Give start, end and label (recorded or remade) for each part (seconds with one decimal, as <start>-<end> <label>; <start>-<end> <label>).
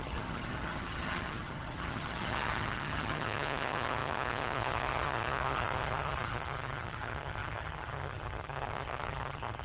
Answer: 0.0-9.6 remade